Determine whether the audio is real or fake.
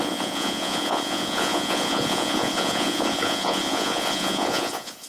fake